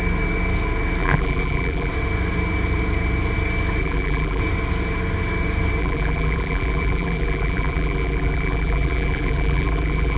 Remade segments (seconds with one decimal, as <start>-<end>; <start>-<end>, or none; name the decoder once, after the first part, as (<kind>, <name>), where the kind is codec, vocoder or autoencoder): 1.0-1.9 (vocoder, BigVGAN v2); 3.8-4.4; 5.8-10.2